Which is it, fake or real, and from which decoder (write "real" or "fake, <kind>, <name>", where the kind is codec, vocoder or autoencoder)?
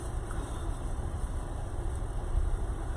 fake, vocoder, BigVGAN v2